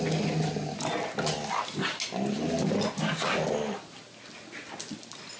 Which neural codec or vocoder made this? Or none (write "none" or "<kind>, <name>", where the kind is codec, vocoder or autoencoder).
none